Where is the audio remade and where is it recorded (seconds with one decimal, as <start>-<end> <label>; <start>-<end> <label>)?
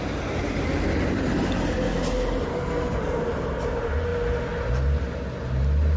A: 0.0-2.5 recorded; 2.5-3.2 remade; 3.2-6.0 recorded